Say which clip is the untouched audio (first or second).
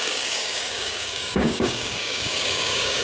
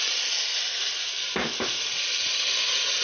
second